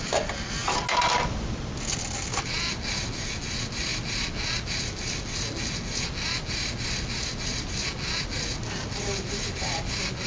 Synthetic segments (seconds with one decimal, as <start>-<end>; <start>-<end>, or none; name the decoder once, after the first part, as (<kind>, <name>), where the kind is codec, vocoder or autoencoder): none